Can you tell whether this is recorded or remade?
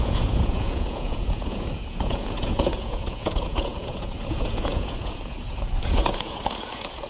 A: remade